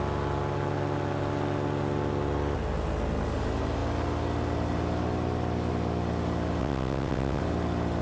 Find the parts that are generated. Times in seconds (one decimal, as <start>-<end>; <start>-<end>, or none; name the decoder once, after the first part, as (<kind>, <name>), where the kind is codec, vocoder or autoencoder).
6.6-7.4 (vocoder, WaveNeXt)